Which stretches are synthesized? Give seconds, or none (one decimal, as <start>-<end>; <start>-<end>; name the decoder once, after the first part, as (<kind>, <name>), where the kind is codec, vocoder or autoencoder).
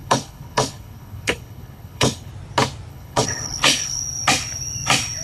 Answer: 0.0-2.3 (codec, HILCodec); 2.9-4.0